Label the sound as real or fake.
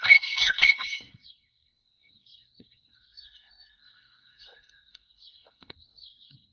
fake